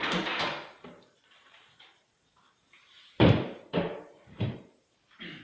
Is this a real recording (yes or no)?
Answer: no